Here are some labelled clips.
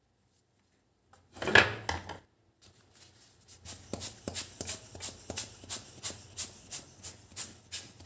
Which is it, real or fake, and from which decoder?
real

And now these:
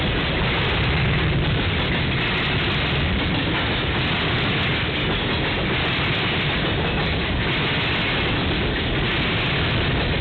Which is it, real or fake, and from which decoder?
real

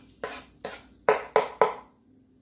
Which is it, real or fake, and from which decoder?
real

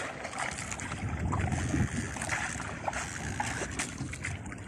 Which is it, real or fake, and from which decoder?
real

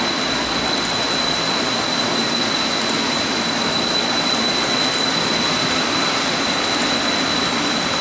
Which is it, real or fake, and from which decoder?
real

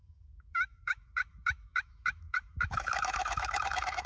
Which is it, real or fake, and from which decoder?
fake, autoencoder, DAC-VAE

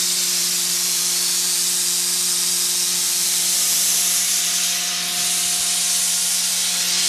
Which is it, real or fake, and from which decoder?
real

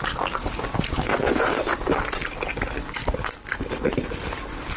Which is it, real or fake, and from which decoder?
real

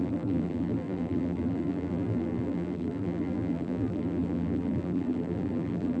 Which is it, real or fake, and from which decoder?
fake, vocoder, BigVGAN v2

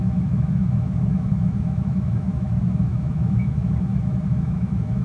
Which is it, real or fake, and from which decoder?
fake, autoencoder, DAC-VAE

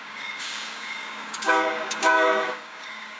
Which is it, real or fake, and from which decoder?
fake, codec, DAC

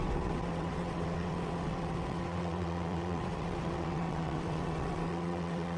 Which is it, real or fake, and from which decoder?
fake, vocoder, WaveNeXt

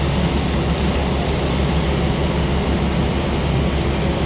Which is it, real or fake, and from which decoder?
real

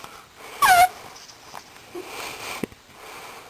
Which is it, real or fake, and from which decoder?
real